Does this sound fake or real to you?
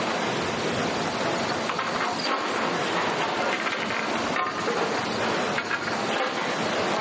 real